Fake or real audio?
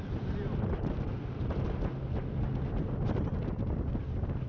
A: real